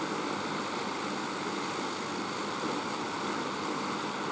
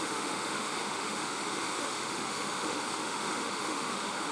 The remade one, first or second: second